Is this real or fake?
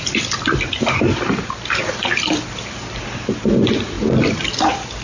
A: real